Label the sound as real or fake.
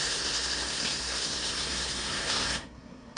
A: fake